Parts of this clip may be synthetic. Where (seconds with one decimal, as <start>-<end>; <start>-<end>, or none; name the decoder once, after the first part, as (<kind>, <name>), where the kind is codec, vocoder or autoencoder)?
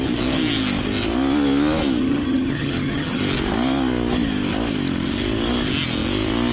2.0-3.2 (vocoder, HiFi-GAN)